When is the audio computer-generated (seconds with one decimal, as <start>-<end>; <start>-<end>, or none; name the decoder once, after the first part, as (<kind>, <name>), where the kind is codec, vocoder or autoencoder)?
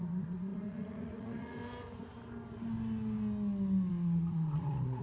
0.0-1.6 (vocoder, Vocos); 3.9-5.0